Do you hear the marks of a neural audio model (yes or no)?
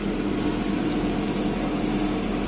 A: no